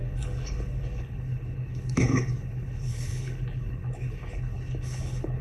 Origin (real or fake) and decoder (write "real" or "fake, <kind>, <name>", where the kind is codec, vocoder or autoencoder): fake, codec, HILCodec